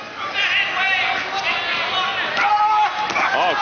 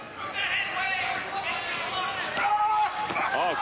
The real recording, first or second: first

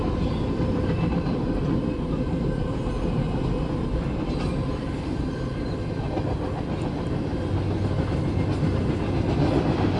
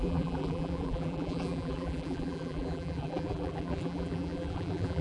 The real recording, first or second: first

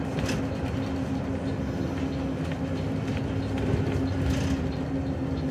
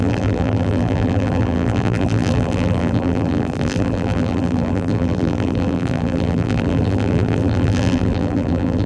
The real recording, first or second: first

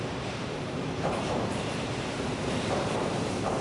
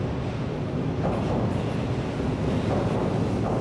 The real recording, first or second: second